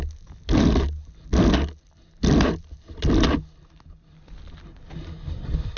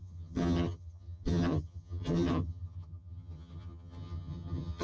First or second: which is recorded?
first